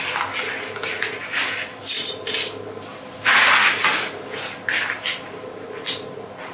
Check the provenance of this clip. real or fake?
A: real